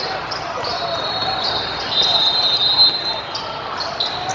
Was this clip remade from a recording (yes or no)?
no